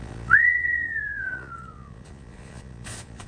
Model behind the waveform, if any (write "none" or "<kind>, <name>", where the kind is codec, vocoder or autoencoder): vocoder, Vocos